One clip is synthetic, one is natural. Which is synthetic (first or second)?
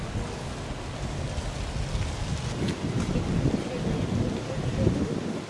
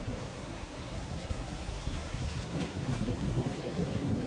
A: second